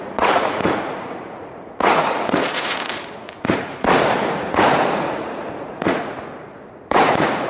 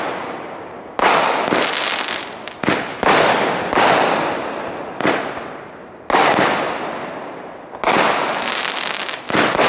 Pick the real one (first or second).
second